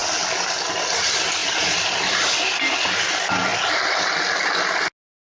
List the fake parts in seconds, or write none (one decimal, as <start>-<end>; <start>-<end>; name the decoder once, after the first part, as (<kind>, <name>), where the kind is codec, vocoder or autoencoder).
none